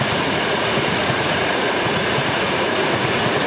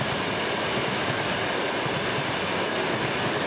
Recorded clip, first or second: second